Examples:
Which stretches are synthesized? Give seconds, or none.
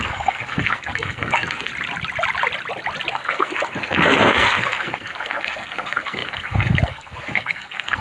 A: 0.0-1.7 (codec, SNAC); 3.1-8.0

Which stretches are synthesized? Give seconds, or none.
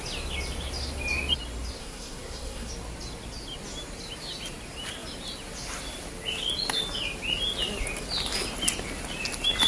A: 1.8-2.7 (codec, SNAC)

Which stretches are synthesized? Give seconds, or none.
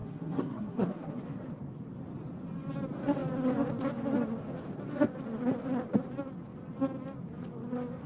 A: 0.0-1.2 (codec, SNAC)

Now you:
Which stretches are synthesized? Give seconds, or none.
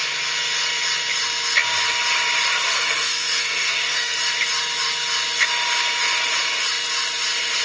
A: 2.7-4.2 (codec, SNAC)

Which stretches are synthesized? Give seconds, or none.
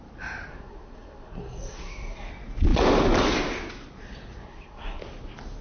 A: 0.5-2.3 (codec, SNAC); 4.4-5.0